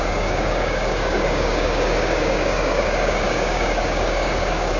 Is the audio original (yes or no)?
no